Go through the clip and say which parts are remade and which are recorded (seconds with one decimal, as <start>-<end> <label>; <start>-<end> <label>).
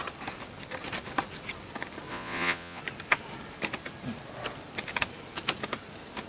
0.0-2.1 recorded; 2.1-2.8 remade; 2.8-6.3 recorded